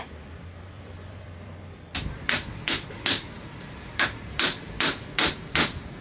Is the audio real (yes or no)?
no